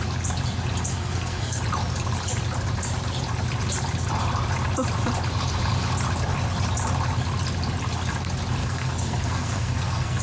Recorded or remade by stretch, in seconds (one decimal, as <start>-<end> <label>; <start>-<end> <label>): 0.0-0.9 recorded; 0.9-1.6 remade; 1.6-8.6 recorded; 8.6-10.2 remade